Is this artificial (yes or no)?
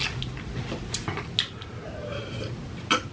no